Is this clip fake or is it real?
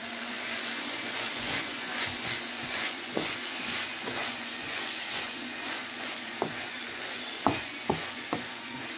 fake